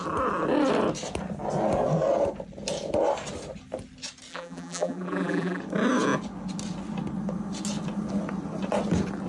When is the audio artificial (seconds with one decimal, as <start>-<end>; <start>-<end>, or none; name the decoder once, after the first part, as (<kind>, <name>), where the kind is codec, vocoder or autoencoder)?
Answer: 4.3-5.6 (vocoder, BigVGAN v2)